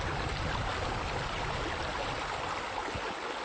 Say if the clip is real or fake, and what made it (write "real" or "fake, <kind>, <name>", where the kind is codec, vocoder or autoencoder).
real